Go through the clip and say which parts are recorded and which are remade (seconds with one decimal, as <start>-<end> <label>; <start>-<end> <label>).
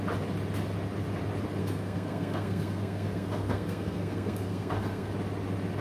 0.0-1.6 recorded; 1.6-5.1 remade; 5.1-5.8 recorded